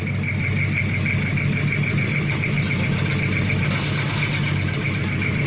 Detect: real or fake real